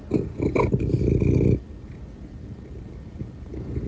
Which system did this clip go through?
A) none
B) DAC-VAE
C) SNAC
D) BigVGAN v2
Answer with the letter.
A